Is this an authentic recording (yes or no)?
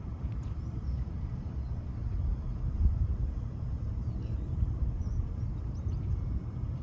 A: no